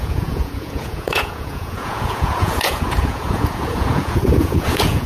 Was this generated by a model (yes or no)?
yes